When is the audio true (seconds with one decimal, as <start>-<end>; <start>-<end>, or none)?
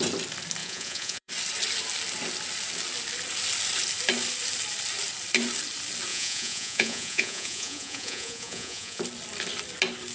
0.0-0.6; 1.3-6.1; 9.0-10.1